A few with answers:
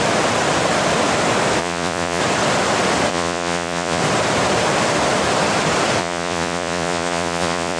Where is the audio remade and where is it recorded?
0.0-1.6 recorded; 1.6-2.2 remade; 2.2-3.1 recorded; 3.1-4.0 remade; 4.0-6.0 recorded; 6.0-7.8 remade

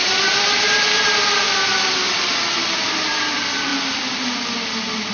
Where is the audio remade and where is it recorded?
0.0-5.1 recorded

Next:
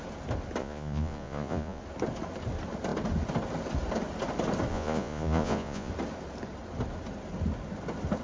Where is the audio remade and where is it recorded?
0.0-0.6 recorded; 0.6-1.8 remade; 1.8-4.7 recorded; 4.7-5.9 remade; 5.9-8.2 recorded

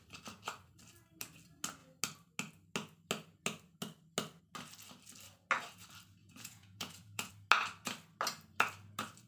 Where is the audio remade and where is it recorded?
0.0-6.2 recorded; 6.2-7.3 remade; 7.3-9.3 recorded

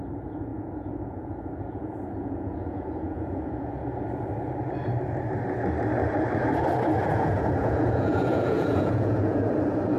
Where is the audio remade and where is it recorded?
0.0-0.5 recorded; 0.5-3.7 remade; 3.7-7.1 recorded; 7.1-9.5 remade; 9.5-10.0 recorded

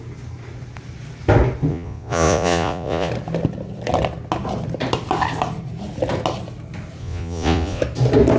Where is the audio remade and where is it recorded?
0.0-1.7 recorded; 1.7-3.1 remade; 3.1-7.0 recorded; 7.0-7.8 remade; 7.8-8.4 recorded